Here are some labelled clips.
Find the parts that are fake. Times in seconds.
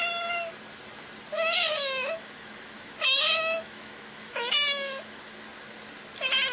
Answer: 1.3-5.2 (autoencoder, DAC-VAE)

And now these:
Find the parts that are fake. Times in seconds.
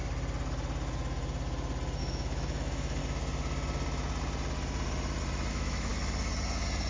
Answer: 2.0-3.0 (autoencoder, DAC-VAE); 5.5-5.9